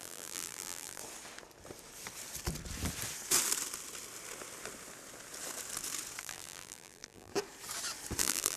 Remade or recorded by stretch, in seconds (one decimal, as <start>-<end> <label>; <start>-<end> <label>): 0.0-1.0 remade; 1.0-6.2 recorded; 6.2-7.3 remade; 7.3-8.2 recorded; 8.2-8.6 remade